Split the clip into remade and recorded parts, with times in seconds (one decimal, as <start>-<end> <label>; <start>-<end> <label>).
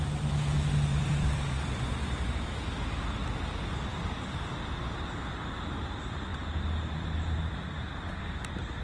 0.0-0.9 recorded; 0.9-1.9 remade; 1.9-3.9 recorded; 3.9-4.8 remade; 4.8-8.8 recorded